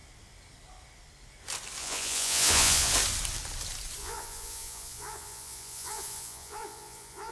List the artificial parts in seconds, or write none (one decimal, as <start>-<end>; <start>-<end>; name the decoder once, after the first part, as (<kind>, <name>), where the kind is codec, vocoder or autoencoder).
1.8-2.9 (vocoder, Vocos); 4.0-7.3